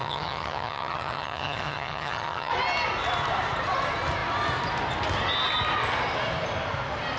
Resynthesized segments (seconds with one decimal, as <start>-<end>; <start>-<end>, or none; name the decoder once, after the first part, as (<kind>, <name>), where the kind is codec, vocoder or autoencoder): 0.0-2.5 (vocoder, HiFi-GAN)